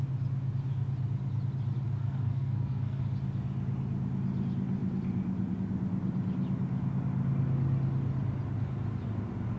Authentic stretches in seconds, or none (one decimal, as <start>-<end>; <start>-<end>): 0.0-2.0; 3.0-9.6